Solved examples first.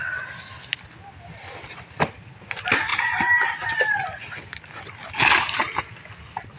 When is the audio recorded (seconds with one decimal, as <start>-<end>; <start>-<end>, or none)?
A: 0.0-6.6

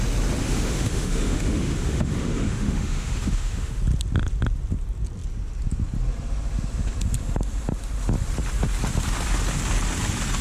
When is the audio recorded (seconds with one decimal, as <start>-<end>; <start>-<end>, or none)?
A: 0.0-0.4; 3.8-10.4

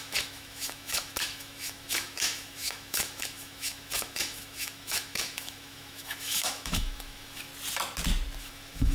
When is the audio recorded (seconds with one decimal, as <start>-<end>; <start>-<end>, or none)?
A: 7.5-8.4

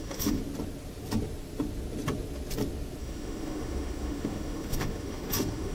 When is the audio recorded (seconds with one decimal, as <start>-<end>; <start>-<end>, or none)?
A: 0.4-3.0

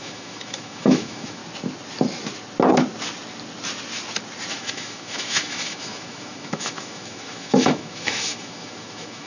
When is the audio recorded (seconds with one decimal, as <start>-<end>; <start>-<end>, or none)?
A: 1.4-4.5

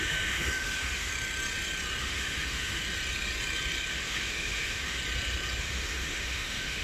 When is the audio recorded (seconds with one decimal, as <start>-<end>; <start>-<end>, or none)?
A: 1.1-2.0; 2.8-3.9; 5.0-5.6